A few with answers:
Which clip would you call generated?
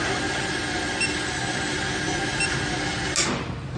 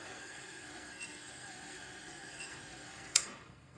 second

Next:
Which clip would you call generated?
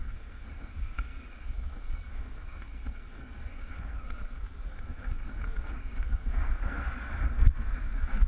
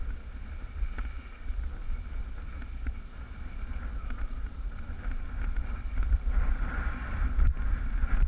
first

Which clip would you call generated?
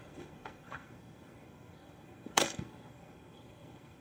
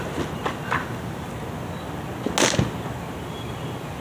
first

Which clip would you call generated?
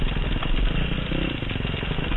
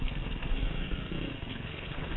second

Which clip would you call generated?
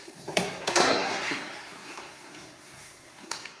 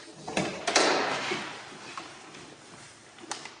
first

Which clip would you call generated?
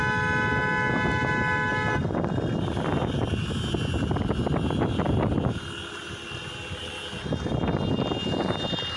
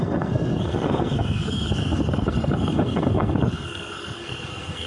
second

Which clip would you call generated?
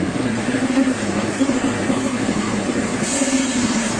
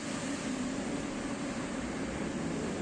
first